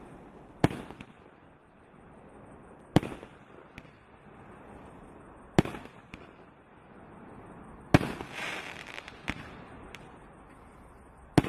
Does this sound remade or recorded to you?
recorded